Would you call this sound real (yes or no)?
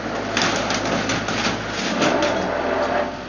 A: yes